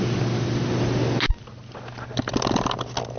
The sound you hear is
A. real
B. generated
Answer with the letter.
A